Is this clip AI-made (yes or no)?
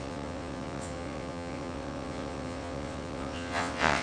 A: yes